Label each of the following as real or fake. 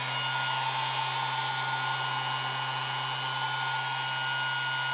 real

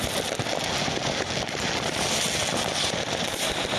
real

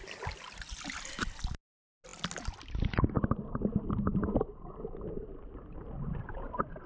real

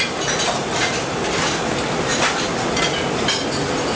real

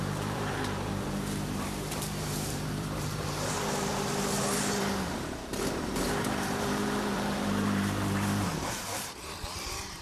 fake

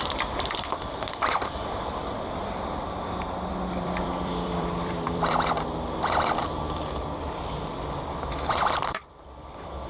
fake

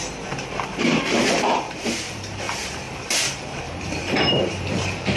fake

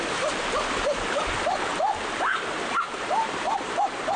fake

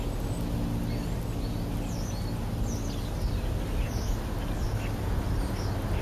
real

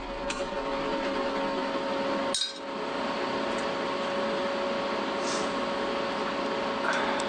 real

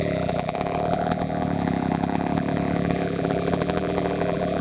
fake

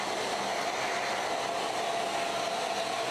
real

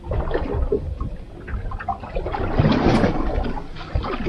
real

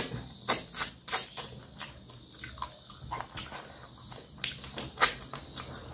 real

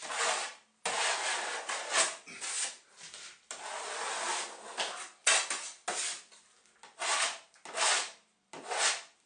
real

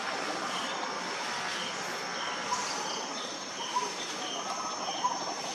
real